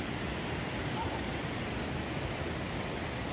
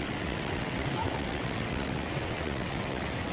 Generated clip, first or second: second